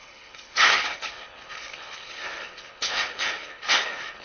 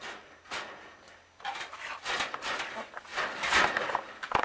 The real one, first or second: second